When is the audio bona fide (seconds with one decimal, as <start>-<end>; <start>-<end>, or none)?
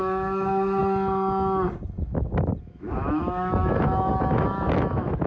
0.8-2.6